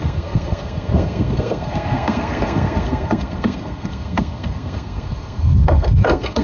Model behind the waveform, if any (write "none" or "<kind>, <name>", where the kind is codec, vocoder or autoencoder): codec, SNAC